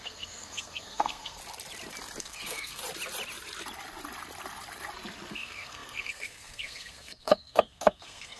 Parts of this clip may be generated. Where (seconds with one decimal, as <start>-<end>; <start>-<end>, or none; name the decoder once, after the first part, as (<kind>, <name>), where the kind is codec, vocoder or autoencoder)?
0.0-1.4 (codec, SNAC); 2.2-2.8; 5.3-8.4